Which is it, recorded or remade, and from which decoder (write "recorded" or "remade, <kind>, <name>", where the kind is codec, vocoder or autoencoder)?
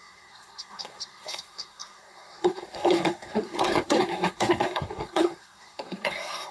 remade, codec, SNAC